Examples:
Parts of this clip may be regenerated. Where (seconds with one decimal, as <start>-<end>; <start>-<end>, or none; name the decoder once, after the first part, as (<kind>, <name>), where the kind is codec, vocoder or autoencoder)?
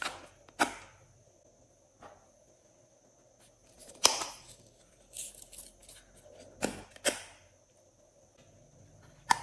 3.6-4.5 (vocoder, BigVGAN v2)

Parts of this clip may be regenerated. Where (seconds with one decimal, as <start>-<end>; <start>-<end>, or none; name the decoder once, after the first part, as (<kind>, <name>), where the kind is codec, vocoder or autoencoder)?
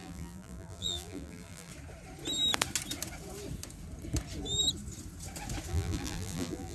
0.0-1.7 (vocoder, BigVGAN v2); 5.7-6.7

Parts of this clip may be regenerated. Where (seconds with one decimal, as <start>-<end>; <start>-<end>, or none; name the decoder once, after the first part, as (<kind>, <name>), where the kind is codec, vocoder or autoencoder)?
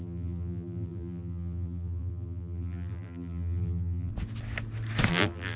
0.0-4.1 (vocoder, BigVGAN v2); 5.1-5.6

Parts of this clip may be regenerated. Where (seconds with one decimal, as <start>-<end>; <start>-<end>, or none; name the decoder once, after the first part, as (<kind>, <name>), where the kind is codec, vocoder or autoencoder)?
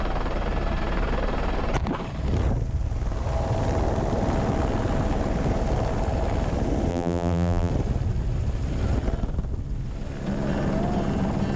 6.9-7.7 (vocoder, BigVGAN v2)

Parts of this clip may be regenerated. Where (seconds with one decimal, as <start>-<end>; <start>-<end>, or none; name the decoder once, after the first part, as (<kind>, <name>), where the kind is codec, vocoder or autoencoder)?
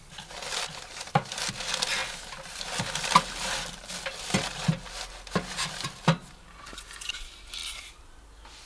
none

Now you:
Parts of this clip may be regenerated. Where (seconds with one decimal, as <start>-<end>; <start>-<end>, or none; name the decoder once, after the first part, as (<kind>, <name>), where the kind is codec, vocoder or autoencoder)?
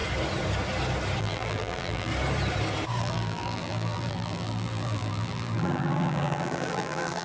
1.2-2.1 (vocoder, BigVGAN v2); 3.0-7.2